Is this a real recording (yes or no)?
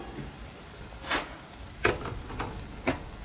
yes